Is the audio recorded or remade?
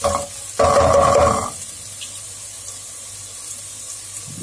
recorded